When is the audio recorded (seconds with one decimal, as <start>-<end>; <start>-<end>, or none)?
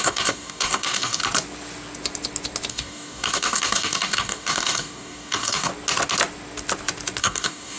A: 1.2-2.7; 5.7-7.2